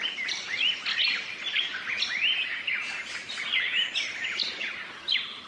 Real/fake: real